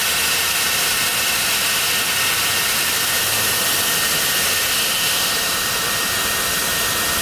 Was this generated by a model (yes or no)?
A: no